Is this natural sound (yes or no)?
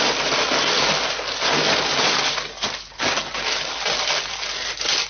yes